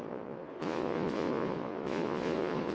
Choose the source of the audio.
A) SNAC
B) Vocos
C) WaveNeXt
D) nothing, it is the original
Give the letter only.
B